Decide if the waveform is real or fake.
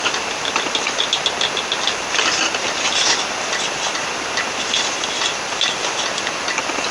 real